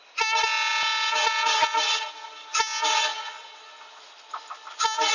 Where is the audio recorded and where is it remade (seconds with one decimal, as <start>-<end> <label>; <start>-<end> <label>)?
0.0-5.1 recorded